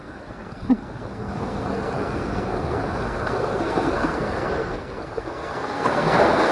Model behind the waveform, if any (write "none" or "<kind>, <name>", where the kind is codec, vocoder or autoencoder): codec, SNAC